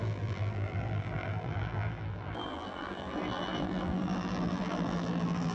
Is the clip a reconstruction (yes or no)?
yes